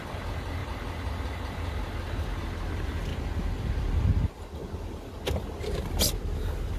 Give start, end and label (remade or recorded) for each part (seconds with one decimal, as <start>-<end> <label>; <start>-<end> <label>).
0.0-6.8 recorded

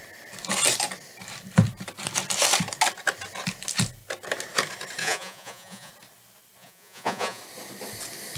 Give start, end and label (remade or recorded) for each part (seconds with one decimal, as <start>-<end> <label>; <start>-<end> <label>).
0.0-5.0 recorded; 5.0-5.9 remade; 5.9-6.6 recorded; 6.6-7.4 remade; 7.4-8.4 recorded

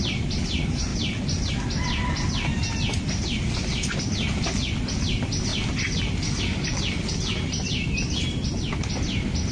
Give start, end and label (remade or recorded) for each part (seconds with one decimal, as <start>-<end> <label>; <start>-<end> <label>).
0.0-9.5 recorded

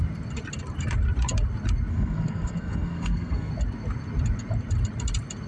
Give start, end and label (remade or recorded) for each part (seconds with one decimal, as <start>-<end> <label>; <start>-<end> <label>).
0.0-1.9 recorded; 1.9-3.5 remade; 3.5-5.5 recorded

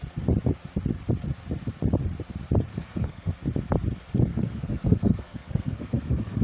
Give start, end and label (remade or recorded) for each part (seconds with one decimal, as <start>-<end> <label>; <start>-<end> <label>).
0.0-2.7 recorded; 2.7-3.3 remade; 3.3-4.3 recorded; 4.3-6.4 remade

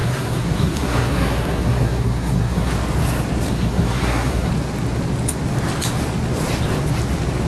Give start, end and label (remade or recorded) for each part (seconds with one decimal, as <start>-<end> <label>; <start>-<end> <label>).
0.0-2.7 remade; 2.7-3.5 recorded; 3.5-4.5 remade; 4.5-7.5 recorded